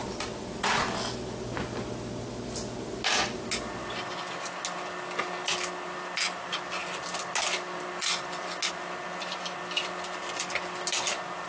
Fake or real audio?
real